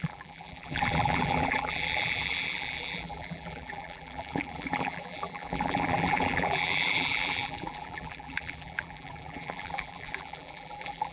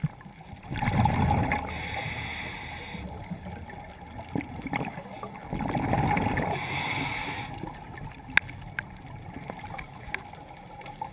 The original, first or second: second